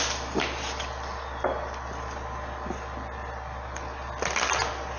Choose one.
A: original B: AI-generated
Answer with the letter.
A